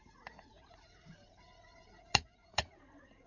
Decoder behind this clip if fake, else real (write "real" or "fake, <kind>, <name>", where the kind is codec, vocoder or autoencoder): fake, vocoder, Vocos